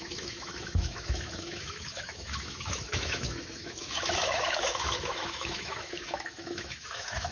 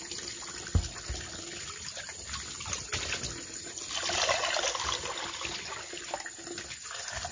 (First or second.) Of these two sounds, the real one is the second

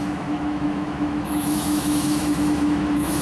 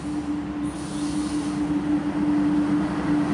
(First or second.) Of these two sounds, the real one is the second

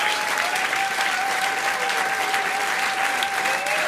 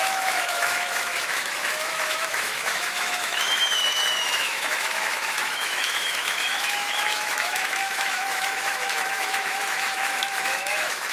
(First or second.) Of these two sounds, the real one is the first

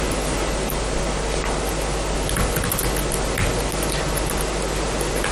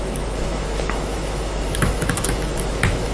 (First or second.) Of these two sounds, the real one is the first